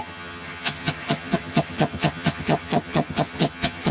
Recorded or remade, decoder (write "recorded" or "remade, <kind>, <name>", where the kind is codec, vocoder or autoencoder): remade, vocoder, HiFi-GAN